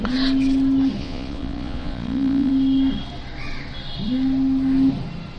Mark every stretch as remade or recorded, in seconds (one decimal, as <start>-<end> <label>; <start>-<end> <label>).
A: 0.0-1.0 recorded; 1.0-2.5 remade; 2.5-5.4 recorded